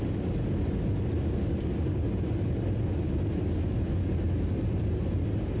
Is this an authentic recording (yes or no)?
yes